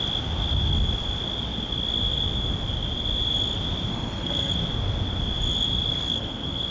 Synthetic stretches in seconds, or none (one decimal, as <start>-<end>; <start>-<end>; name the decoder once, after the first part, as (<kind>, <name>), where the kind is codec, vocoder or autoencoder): 3.9-4.5 (codec, SNAC); 5.9-6.7